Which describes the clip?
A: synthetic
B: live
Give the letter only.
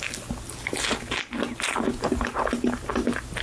B